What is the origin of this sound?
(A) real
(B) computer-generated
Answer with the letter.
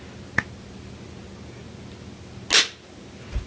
A